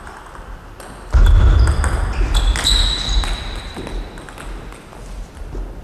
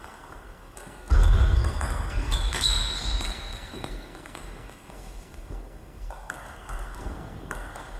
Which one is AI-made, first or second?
second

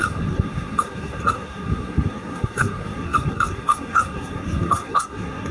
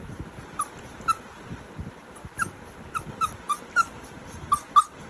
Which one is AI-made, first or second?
first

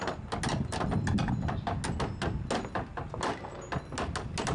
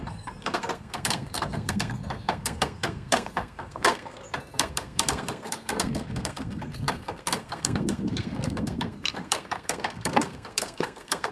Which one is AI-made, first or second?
second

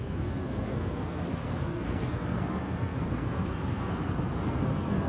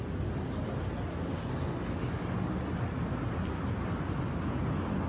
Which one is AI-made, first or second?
first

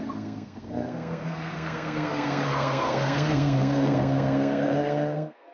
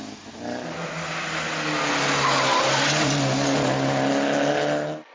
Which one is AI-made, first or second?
first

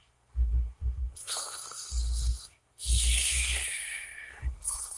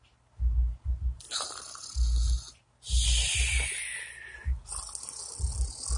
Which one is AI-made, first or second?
first